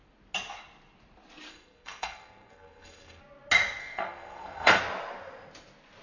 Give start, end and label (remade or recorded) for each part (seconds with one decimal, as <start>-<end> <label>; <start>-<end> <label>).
0.0-1.5 recorded; 1.5-3.2 remade; 3.2-3.8 recorded; 3.8-4.8 remade; 4.8-6.0 recorded